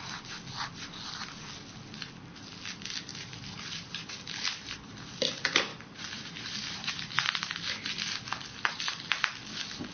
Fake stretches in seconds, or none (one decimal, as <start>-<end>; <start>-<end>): 3.1-5.0; 5.7-7.3